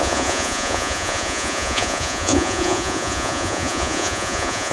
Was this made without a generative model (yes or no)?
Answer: no